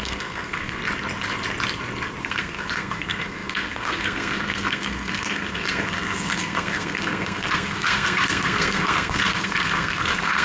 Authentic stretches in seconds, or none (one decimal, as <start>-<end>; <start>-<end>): 0.8-2.2